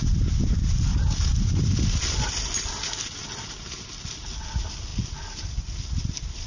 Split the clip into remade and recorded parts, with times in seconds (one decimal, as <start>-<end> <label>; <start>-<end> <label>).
0.0-6.5 recorded